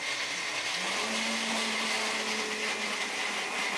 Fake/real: real